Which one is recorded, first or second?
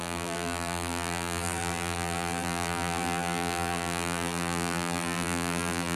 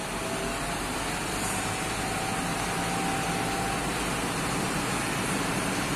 second